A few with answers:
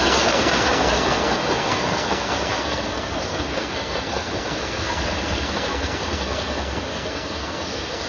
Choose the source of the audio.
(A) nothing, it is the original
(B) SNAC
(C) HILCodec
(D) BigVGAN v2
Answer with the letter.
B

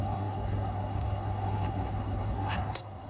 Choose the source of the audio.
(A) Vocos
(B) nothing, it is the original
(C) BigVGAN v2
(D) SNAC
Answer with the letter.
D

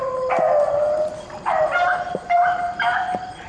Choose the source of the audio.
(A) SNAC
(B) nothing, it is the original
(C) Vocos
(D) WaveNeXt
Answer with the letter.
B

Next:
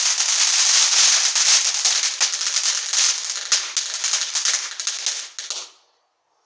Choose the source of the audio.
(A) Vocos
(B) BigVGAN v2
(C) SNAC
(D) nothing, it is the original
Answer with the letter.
D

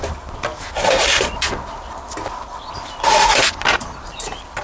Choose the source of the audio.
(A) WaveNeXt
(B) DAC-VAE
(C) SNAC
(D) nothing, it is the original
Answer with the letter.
D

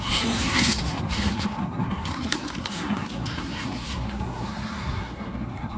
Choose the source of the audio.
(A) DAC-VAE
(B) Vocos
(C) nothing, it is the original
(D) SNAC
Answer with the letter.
D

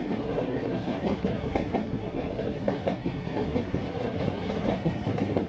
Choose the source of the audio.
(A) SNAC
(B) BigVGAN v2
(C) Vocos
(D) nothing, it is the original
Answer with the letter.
A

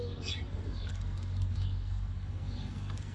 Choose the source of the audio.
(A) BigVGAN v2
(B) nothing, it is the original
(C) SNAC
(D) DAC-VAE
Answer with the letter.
C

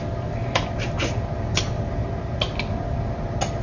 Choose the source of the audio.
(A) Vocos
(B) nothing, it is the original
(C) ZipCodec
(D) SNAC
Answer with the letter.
B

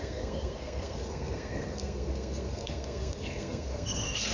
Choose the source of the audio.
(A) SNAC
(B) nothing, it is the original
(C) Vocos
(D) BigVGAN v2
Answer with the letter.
A